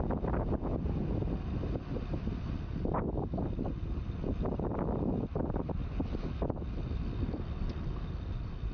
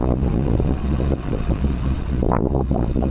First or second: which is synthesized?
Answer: second